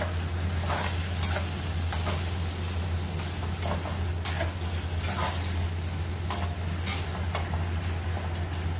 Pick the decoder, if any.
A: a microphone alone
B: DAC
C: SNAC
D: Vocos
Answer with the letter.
A